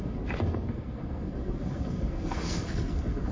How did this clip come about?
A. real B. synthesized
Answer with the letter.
B